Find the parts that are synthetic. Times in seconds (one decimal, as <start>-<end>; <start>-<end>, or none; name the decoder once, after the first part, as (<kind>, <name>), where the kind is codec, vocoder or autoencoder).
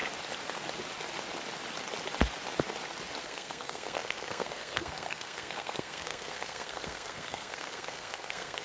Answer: 3.2-8.6 (codec, SNAC)